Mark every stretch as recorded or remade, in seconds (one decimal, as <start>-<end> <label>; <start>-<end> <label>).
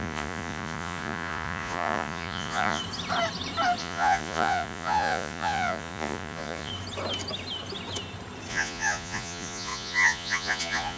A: 0.0-2.8 remade; 2.8-3.8 recorded; 3.8-6.7 remade; 6.7-8.5 recorded; 8.5-11.0 remade